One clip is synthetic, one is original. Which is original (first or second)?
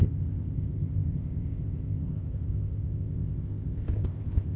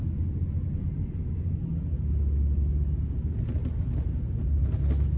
second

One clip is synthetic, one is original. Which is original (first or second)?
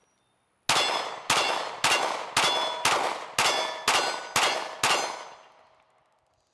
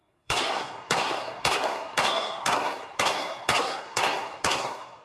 first